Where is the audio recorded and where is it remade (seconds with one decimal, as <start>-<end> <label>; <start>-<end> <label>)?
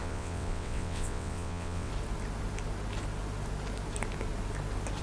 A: 0.0-1.9 remade; 1.9-5.0 recorded